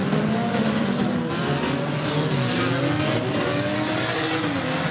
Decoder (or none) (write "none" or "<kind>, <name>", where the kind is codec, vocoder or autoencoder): none